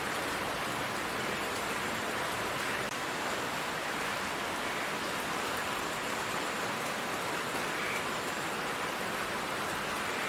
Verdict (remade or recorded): remade